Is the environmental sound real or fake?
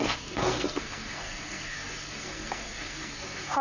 fake